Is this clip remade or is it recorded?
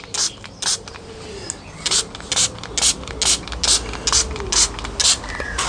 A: recorded